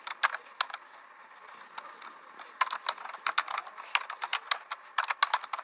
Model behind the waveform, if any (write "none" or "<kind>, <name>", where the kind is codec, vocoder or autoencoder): none